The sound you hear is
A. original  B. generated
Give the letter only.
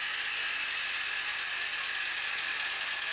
A